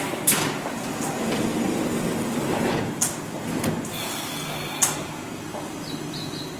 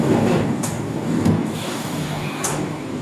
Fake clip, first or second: second